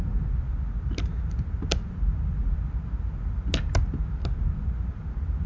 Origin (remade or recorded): recorded